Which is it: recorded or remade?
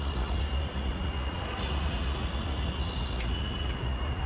remade